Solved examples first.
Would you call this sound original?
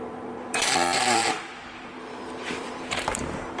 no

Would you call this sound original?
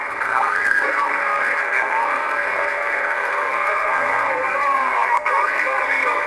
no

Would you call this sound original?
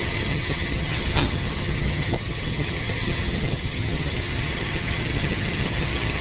no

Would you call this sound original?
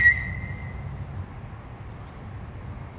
yes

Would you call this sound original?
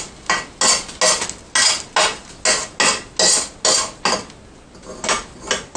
yes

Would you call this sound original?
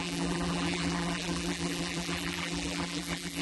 no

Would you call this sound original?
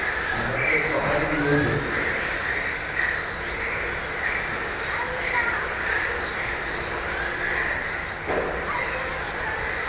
yes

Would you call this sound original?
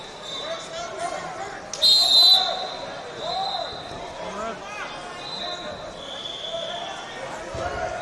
yes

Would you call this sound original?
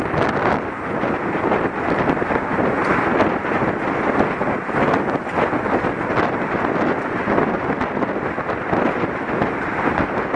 yes